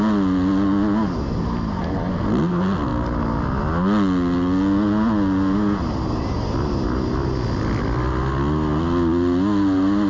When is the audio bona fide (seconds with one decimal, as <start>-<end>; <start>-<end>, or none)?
0.0-10.1